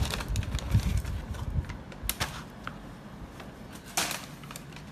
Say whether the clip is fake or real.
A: real